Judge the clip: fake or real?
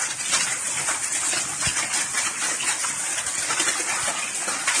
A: real